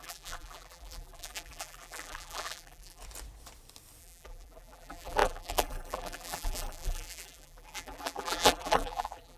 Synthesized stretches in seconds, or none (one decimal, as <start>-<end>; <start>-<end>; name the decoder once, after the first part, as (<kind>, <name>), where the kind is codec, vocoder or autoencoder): 0.0-3.0 (vocoder, BigVGAN v2); 4.0-9.4